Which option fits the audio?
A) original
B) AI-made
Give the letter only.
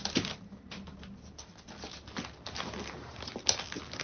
A